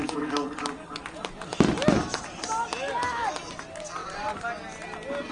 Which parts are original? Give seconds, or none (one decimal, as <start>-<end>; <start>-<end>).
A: 0.0-5.3